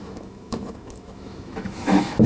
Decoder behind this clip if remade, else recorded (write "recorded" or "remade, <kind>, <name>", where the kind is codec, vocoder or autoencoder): remade, autoencoder, DAC-VAE